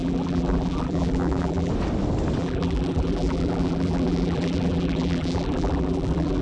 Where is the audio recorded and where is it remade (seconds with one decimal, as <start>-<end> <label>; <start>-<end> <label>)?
0.0-1.7 remade; 1.7-2.4 recorded; 2.4-6.4 remade